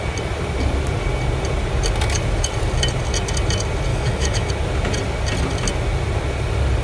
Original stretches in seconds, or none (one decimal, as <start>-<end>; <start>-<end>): 0.0-3.9; 4.5-6.8